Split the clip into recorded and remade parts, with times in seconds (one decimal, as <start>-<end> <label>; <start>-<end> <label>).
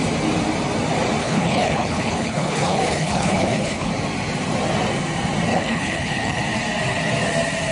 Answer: 0.0-1.2 recorded; 1.2-3.9 remade; 3.9-5.5 recorded; 5.5-6.4 remade; 6.4-7.7 recorded